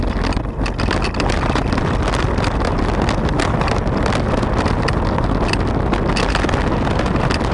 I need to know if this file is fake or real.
real